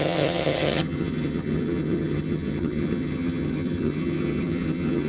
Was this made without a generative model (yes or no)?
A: no